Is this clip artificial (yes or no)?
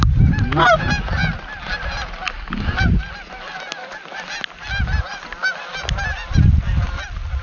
no